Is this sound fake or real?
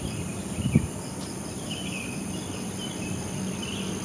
fake